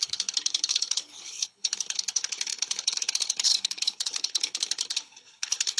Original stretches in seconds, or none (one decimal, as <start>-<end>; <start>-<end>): none